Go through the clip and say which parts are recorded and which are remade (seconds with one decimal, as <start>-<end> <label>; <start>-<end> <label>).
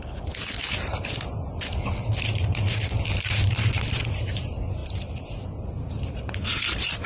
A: 0.0-4.8 recorded; 4.8-6.2 remade; 6.2-7.1 recorded